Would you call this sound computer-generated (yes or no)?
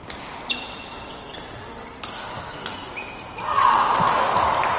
no